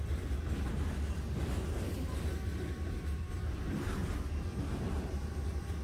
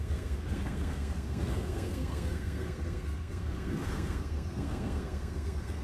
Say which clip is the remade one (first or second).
second